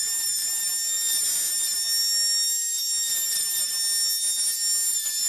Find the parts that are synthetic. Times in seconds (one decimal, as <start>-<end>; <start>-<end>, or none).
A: none